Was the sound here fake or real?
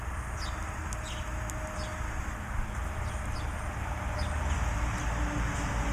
real